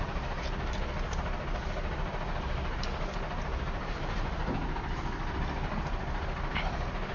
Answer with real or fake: real